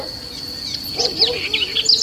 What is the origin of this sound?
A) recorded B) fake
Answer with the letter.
A